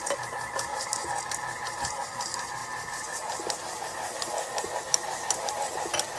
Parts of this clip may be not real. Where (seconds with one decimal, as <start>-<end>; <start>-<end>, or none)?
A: 0.7-1.2; 2.6-5.5